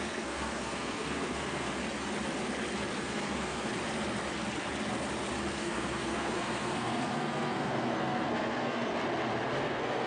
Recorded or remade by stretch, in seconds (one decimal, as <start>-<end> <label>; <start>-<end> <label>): 0.0-1.8 remade; 1.8-3.0 recorded; 3.0-3.7 remade; 3.7-5.5 recorded; 5.5-8.9 remade; 8.9-9.6 recorded; 9.6-10.1 remade